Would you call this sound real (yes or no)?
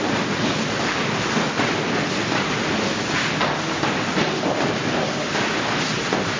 yes